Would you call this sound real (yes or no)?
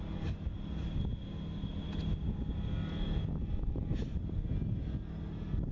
yes